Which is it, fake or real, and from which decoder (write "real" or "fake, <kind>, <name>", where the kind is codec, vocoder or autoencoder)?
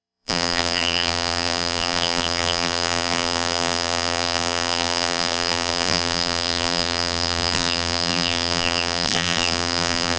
fake, vocoder, BigVGAN v2